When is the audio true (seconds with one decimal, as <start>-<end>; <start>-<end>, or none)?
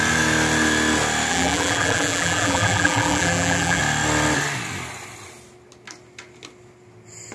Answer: 0.0-1.3; 3.8-7.3